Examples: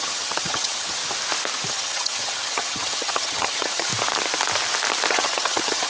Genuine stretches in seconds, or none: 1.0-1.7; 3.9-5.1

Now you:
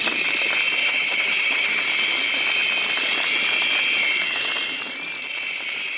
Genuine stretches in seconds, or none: 0.0-0.8; 1.8-6.0

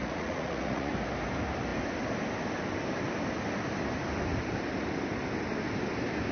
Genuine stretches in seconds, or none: 0.9-6.3